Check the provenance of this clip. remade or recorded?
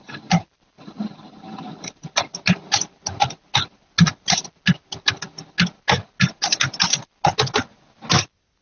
recorded